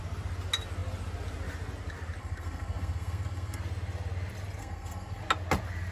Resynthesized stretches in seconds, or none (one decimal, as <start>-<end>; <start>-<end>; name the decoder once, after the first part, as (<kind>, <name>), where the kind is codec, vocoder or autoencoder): 2.2-3.6 (codec, SNAC); 4.6-5.2